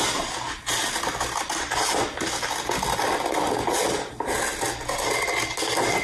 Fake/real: real